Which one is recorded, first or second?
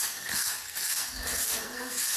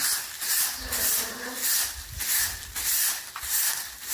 second